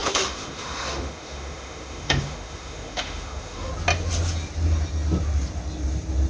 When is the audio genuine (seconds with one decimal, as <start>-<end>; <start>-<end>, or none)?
3.7-6.3